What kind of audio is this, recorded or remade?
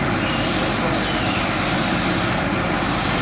recorded